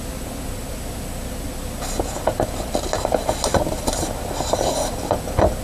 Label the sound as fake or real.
real